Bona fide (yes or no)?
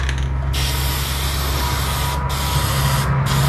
yes